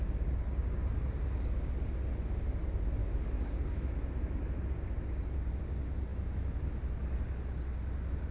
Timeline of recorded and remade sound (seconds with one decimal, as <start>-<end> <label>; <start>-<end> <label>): 0.0-3.0 recorded; 3.0-3.7 remade; 3.7-8.3 recorded